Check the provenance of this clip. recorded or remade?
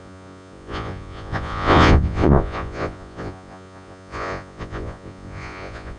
remade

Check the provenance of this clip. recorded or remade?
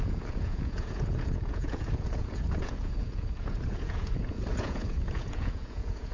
remade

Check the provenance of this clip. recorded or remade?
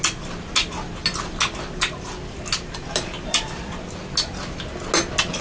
recorded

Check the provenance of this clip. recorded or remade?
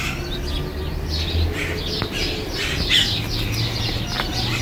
recorded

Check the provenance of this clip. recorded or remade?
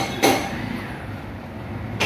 recorded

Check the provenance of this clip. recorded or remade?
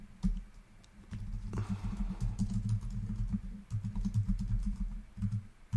recorded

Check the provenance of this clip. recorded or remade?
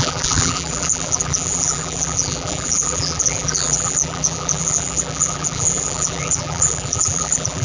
remade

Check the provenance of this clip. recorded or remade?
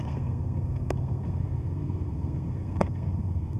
remade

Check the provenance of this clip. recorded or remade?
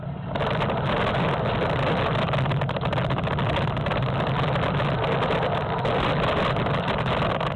recorded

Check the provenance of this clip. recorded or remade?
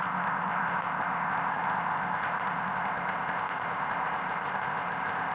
remade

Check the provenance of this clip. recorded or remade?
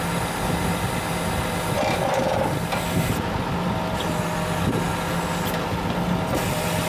recorded